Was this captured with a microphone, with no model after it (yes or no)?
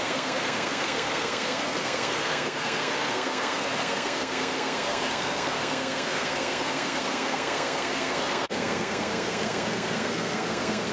no